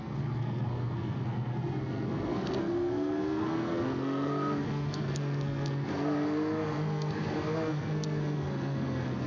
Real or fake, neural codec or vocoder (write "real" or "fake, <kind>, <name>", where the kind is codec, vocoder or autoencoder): fake, codec, SNAC